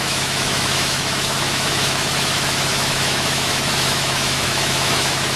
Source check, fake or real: fake